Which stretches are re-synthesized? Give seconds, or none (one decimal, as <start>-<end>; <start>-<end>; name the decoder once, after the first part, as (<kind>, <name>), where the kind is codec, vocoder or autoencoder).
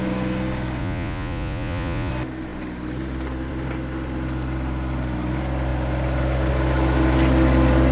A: 0.8-2.1 (vocoder, Vocos)